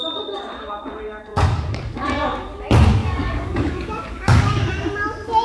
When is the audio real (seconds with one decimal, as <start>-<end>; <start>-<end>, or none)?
0.0-1.3; 2.6-3.0; 4.7-5.4